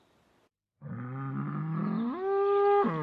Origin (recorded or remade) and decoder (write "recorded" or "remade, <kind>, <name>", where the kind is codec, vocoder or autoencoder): recorded